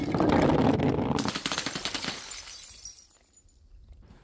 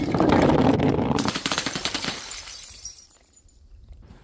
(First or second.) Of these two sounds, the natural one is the first